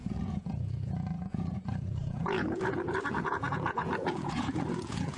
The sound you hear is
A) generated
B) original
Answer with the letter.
A